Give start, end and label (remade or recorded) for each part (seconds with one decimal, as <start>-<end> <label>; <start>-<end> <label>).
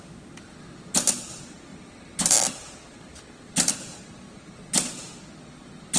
0.0-6.0 recorded